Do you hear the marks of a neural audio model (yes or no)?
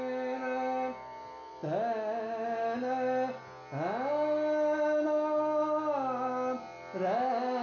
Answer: no